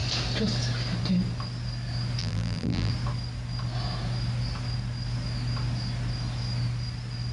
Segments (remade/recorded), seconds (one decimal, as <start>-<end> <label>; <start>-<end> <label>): 0.0-2.2 recorded; 2.2-2.9 remade; 2.9-7.3 recorded